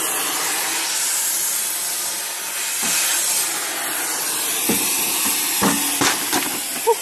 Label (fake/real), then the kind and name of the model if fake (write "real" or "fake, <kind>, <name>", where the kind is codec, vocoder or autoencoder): real